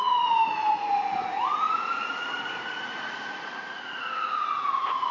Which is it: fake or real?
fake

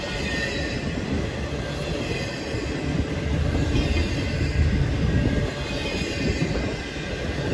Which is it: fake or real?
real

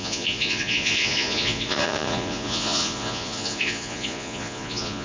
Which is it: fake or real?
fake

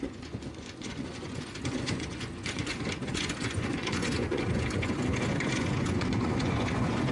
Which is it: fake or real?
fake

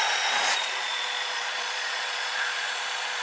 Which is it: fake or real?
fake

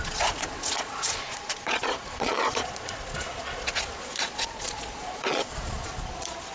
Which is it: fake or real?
fake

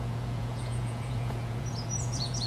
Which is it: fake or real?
fake